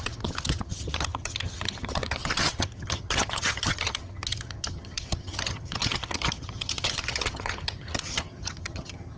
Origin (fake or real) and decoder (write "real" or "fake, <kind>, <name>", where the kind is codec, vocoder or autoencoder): fake, vocoder, HiFi-GAN